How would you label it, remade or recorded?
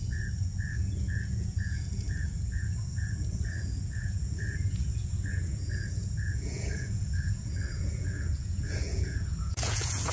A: remade